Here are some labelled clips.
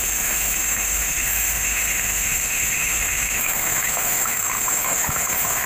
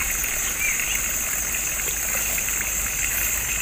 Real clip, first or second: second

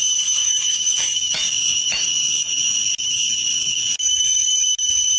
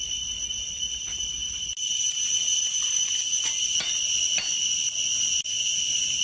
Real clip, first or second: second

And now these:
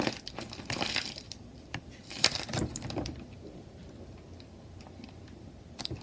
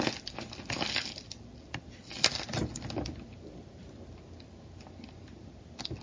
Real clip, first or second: second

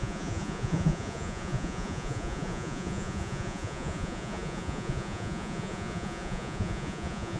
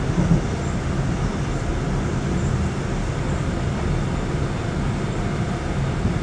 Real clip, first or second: second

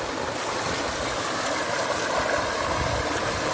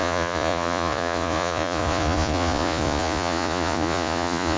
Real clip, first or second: first